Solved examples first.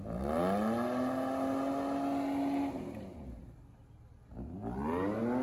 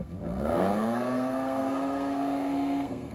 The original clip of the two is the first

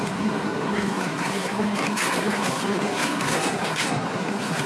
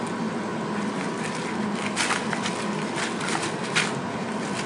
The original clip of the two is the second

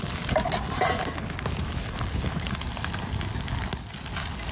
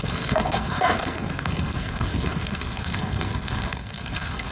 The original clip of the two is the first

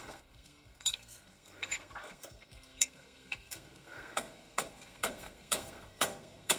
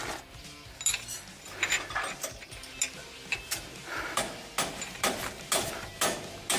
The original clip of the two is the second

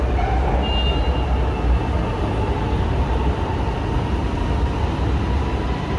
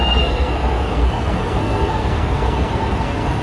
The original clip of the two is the first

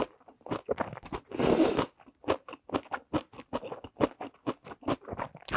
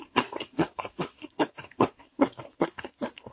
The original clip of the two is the first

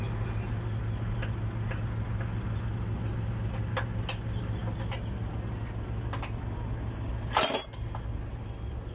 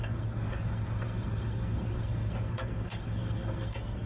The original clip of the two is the first